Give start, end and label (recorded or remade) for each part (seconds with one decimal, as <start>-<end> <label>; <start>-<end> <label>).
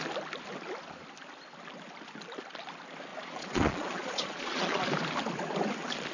0.0-3.1 recorded; 3.1-4.8 remade; 4.8-6.1 recorded